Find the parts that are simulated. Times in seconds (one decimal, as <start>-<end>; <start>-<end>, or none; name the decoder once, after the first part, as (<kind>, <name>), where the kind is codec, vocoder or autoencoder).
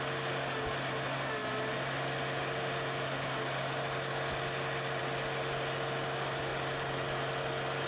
none